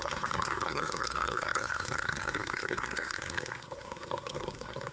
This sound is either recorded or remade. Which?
remade